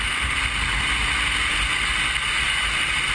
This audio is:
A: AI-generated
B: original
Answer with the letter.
B